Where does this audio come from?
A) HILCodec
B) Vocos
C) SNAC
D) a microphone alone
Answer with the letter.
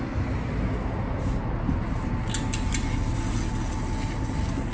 D